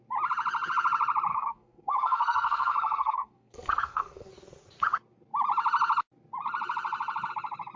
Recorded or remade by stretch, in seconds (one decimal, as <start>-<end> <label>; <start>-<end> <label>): 0.0-1.3 recorded; 1.3-4.3 remade; 4.3-7.8 recorded